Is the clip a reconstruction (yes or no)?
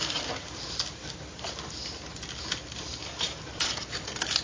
no